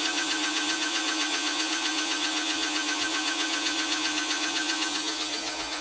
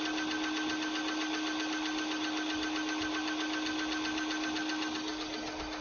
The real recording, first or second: second